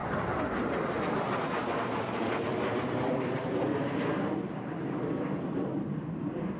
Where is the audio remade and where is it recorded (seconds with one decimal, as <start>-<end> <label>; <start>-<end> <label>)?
0.0-6.6 recorded